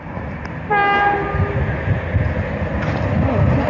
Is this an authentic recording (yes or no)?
yes